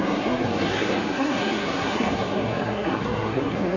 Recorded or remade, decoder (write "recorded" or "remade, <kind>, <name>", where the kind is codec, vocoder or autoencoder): remade, codec, SNAC